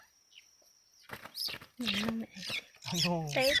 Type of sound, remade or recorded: remade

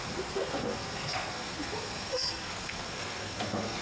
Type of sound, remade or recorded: remade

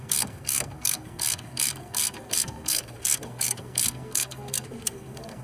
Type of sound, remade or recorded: remade